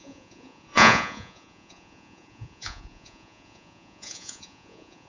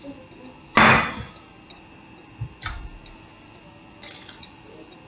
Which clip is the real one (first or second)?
second